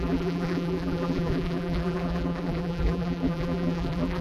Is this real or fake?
fake